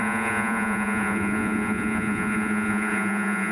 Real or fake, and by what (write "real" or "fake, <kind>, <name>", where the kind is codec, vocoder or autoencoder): fake, vocoder, Vocos